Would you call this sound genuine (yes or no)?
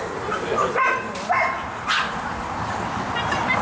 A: yes